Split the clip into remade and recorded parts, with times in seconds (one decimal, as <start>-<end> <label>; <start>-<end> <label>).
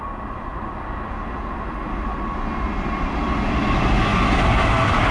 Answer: 0.0-5.1 recorded